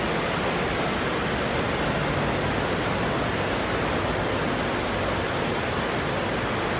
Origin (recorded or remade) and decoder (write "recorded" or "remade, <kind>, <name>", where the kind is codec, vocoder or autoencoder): recorded